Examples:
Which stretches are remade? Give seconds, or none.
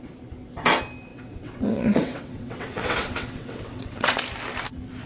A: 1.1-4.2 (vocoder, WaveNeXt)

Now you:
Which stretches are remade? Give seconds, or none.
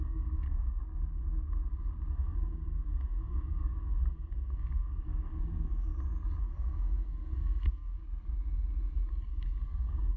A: 0.0-0.8 (codec, SNAC); 2.1-5.9; 6.4-8.0; 9.1-10.2